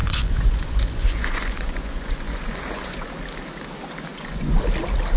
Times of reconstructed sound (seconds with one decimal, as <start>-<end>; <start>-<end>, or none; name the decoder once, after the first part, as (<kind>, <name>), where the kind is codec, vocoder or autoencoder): 0.0-3.1 (vocoder, Vocos); 4.1-4.6